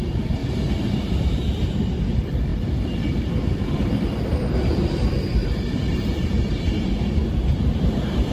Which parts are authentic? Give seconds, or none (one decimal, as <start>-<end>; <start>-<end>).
0.4-1.2